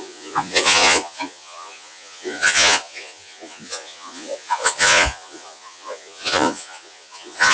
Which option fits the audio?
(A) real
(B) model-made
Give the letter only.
B